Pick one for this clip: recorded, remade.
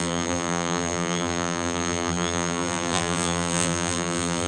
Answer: remade